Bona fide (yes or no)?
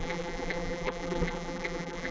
no